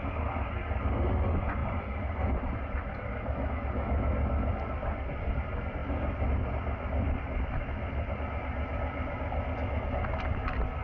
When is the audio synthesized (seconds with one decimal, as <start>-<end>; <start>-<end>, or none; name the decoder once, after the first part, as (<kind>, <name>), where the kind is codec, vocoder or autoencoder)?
1.6-3.5 (vocoder, BigVGAN v2); 5.8-8.1